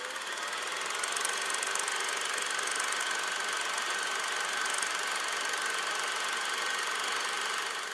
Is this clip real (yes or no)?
yes